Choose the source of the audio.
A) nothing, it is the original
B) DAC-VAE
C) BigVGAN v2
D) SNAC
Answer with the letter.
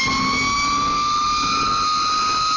A